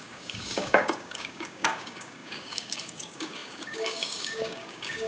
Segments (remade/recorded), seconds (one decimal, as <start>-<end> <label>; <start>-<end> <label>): 0.0-5.1 remade